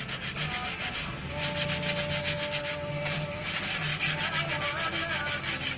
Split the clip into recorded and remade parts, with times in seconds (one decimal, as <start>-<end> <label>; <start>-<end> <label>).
0.0-2.2 recorded; 2.2-2.9 remade; 2.9-5.8 recorded